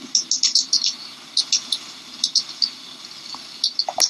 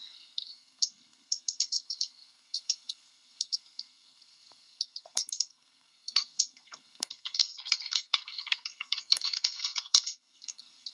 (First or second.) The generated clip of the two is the second